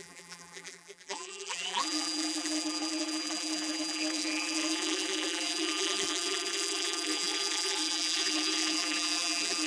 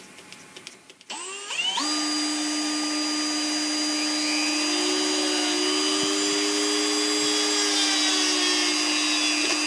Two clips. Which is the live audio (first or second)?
second